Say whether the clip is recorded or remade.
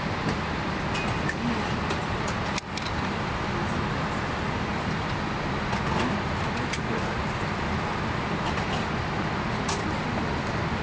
recorded